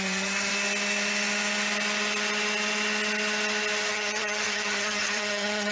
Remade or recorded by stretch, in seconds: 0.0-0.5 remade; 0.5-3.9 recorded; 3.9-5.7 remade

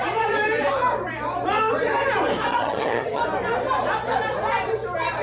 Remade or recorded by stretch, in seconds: 0.0-2.5 recorded; 2.5-3.2 remade; 3.2-5.2 recorded

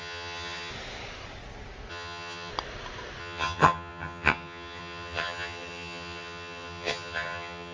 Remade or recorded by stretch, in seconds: 0.0-0.7 remade; 0.7-1.9 recorded; 1.9-2.5 remade; 2.5-3.2 recorded; 3.2-7.7 remade

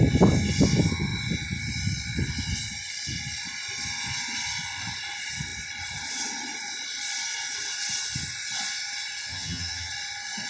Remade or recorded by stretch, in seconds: 0.0-9.3 recorded; 9.3-9.9 remade; 9.9-10.5 recorded

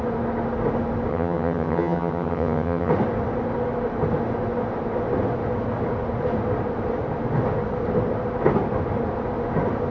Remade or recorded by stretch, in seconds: 0.0-1.1 recorded; 1.1-2.9 remade; 2.9-9.9 recorded

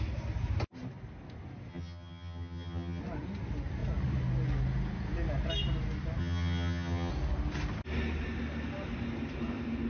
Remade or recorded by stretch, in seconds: 0.0-1.7 recorded; 1.7-3.0 remade; 3.0-6.2 recorded; 6.2-7.1 remade; 7.1-9.9 recorded

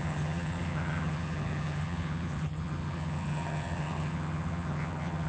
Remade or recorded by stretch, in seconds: 0.0-5.3 remade

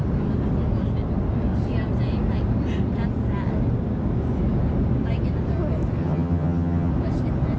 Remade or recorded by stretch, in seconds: 0.0-6.0 recorded; 6.0-6.9 remade; 6.9-7.6 recorded